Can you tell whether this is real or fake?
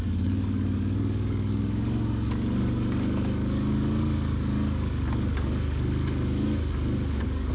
fake